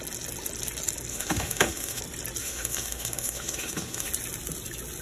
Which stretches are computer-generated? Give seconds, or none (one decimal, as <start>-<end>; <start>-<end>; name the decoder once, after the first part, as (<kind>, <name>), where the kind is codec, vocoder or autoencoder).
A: 1.1-2.0 (autoencoder, DAC-VAE); 2.4-4.1